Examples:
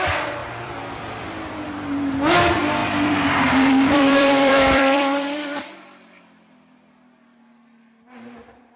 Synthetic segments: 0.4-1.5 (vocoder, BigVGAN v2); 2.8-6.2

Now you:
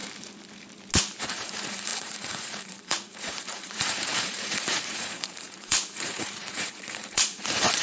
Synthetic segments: 1.2-7.8 (vocoder, Vocos)

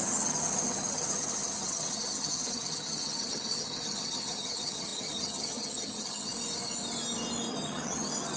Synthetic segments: 0.0-6.3 (vocoder, HiFi-GAN); 7.5-8.4

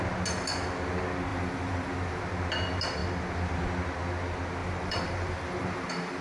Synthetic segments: 1.3-2.2 (vocoder, BigVGAN v2); 4.6-6.2